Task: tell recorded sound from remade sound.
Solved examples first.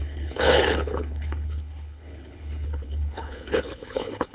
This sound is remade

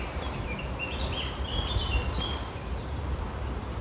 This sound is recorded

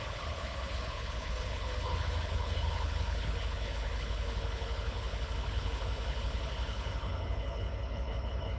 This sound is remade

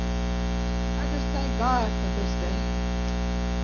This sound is recorded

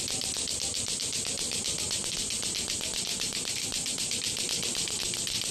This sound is recorded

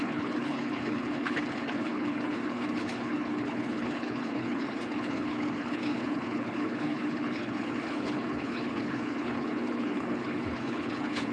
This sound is remade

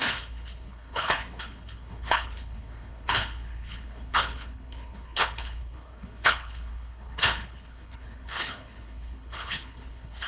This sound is remade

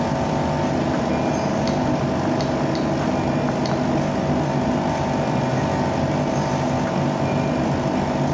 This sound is recorded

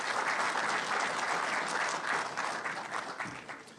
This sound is recorded